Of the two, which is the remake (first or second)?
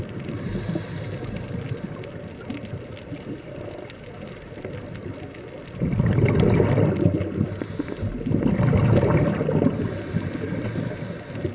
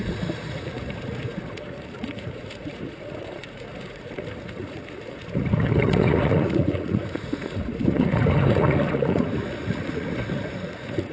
second